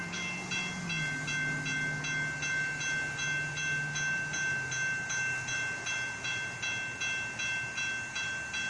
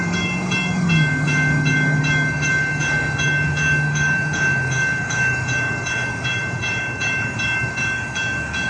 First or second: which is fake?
second